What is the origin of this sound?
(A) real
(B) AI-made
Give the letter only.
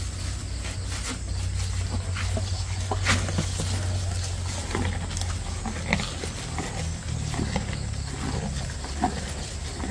A